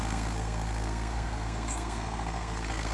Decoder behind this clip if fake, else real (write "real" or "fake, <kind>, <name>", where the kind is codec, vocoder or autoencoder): fake, codec, SNAC